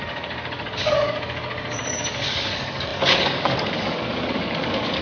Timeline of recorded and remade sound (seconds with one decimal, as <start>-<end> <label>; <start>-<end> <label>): 0.0-5.0 remade